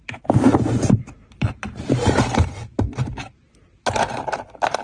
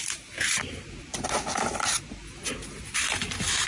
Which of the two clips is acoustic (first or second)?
second